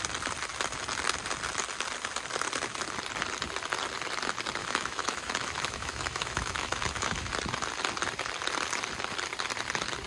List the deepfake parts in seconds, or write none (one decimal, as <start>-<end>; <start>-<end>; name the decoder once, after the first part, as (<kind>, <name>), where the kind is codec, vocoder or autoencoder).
4.6-7.3 (autoencoder, DAC-VAE)

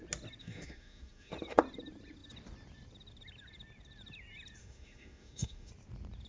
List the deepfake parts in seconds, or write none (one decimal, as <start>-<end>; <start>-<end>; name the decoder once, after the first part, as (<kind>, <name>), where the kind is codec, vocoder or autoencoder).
0.4-1.3 (autoencoder, DAC-VAE); 4.6-5.7

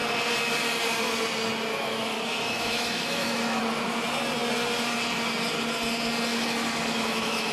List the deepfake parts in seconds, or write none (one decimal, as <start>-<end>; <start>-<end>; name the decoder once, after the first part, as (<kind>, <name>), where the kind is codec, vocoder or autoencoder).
1.7-3.6 (autoencoder, DAC-VAE); 6.3-7.5